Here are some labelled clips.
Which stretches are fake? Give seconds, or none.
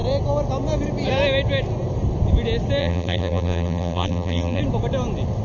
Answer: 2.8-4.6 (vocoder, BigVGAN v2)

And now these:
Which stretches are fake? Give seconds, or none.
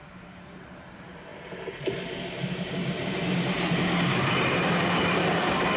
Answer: none